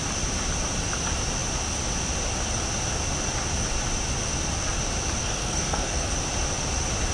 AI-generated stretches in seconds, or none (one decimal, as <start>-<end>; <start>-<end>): 5.2-6.1

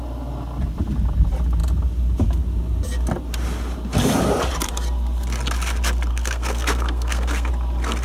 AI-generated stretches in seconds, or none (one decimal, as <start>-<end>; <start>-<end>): 6.1-7.5

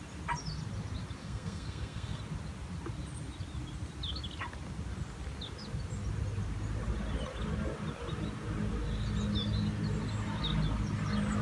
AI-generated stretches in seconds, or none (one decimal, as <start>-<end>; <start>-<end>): 1.2-2.2